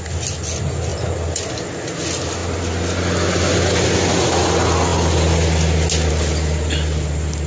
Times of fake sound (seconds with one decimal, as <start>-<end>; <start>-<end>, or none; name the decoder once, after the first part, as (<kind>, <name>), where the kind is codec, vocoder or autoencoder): none